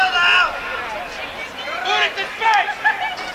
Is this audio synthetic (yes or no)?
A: no